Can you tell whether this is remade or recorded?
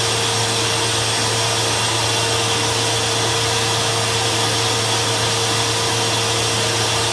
recorded